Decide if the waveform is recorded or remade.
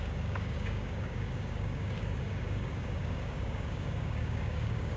remade